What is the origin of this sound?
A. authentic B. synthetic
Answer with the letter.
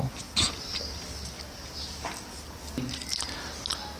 A